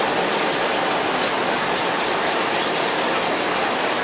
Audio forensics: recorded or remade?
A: recorded